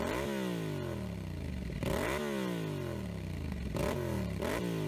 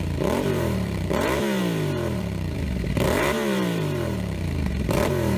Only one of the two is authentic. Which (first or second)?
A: first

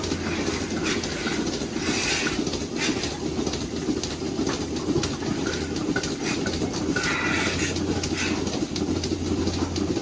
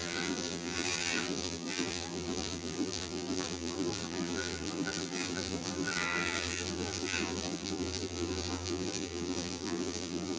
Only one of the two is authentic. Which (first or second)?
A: first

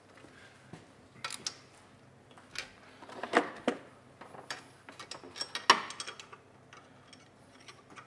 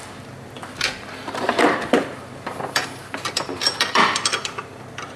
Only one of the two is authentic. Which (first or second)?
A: first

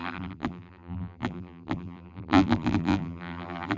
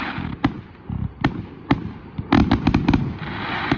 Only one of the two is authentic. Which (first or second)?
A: second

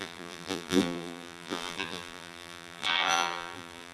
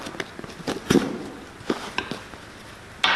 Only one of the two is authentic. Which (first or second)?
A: second